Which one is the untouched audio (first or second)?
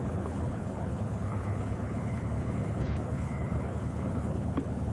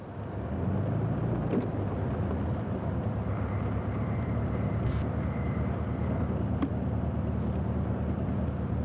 second